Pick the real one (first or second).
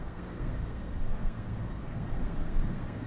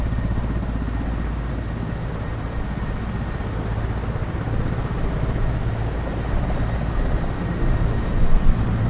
second